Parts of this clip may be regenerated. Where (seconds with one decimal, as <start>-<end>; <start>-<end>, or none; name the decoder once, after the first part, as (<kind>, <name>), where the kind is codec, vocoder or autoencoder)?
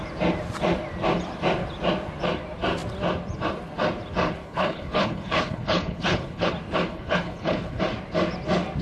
4.4-6.5 (codec, HILCodec); 6.9-7.8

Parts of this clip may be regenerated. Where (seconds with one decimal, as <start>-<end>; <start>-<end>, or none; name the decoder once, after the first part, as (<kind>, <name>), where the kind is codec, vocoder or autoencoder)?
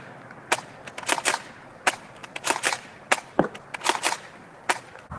2.2-3.1 (vocoder, BigVGAN v2)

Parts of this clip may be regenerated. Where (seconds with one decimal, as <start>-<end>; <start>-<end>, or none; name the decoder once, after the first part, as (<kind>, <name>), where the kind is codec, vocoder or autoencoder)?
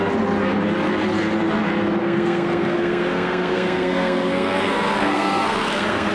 2.0-6.1 (codec, SNAC)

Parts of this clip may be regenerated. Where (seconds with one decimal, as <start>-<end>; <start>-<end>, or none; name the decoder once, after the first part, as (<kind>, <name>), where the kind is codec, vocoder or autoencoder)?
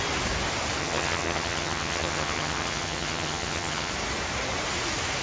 0.8-3.9 (vocoder, HiFi-GAN)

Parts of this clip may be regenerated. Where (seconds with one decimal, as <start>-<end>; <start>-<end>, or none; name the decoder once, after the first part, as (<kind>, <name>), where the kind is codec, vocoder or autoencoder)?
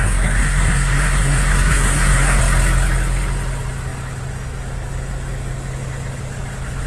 0.0-2.4 (codec, SNAC)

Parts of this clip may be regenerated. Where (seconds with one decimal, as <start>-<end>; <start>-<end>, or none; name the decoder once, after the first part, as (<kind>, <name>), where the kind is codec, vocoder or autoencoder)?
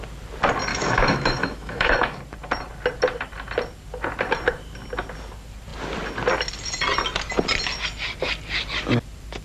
0.7-2.2 (autoencoder, DAC-VAE)